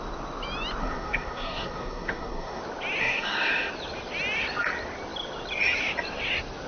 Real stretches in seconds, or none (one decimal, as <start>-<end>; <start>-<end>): 0.0-0.8; 2.6-3.0; 3.7-6.7